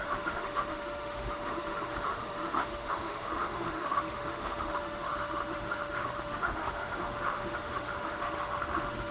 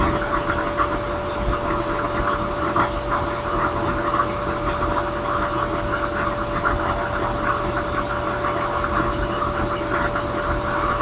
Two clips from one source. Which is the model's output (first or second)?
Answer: first